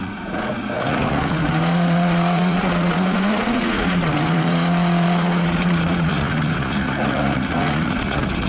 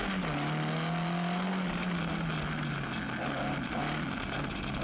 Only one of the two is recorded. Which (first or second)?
second